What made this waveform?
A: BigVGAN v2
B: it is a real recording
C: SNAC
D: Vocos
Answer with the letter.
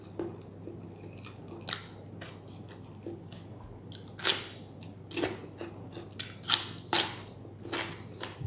B